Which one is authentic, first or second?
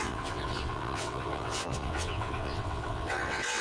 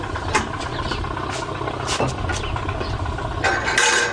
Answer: second